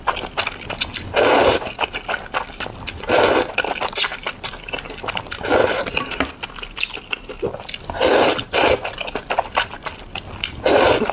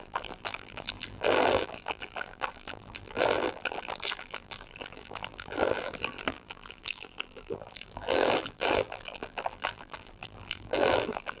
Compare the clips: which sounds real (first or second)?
first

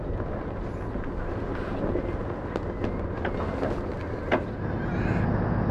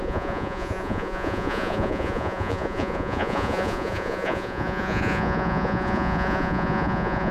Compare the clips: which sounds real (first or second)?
first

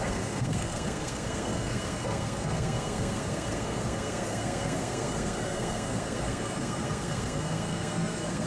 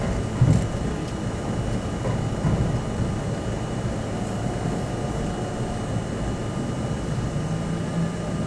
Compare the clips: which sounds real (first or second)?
second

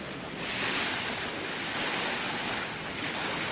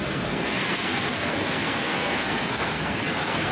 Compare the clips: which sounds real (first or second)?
first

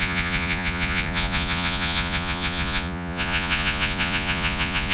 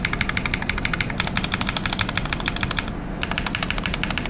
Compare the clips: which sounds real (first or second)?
second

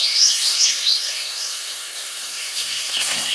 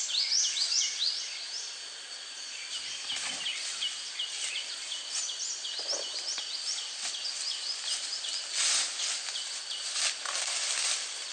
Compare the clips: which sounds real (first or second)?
second